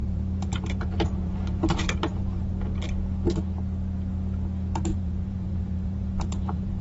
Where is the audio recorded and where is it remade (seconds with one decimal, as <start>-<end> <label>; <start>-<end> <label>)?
0.0-2.5 remade; 2.5-4.9 recorded; 4.9-6.8 remade